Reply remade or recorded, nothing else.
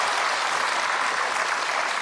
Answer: recorded